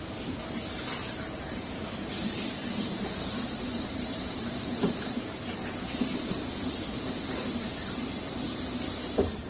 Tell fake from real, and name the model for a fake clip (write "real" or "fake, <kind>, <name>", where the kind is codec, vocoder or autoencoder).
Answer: fake, vocoder, BigVGAN v2